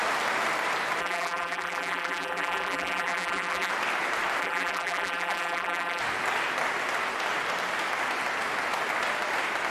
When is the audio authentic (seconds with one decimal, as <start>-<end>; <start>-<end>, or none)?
0.0-1.0; 3.7-4.4; 6.0-9.7